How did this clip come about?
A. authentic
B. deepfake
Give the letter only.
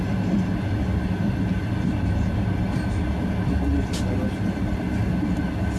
A